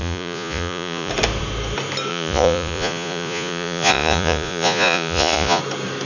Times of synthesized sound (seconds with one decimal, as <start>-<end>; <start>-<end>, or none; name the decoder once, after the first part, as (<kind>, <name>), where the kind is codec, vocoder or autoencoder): 0.0-1.1 (vocoder, Vocos); 2.1-5.6